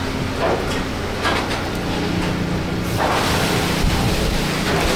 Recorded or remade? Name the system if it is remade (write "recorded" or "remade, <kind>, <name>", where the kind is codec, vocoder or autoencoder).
recorded